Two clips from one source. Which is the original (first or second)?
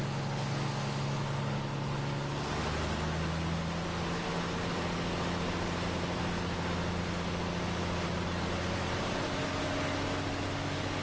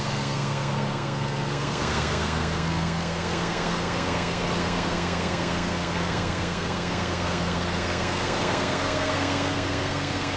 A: first